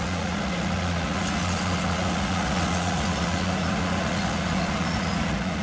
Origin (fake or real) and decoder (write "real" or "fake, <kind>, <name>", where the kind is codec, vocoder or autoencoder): fake, vocoder, Vocos